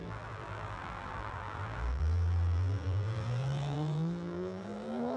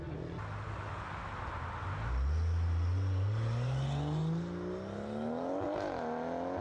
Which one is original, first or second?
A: second